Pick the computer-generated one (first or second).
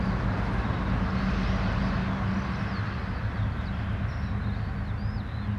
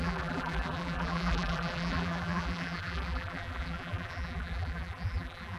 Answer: second